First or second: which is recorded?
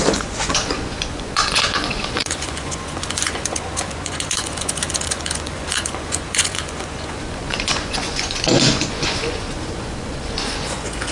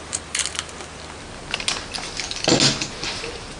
second